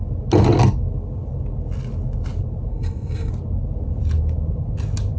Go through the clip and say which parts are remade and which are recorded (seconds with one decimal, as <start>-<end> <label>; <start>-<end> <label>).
0.0-2.7 recorded; 2.7-3.3 remade; 3.3-5.2 recorded